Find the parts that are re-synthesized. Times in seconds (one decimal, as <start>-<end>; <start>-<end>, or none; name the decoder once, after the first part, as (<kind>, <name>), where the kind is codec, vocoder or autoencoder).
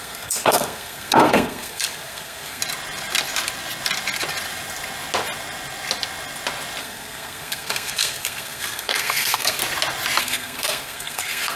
0.0-2.6 (codec, SNAC); 6.8-9.6; 10.2-11.6